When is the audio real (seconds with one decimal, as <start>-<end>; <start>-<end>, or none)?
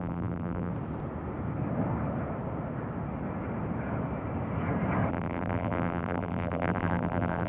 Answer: 0.7-5.1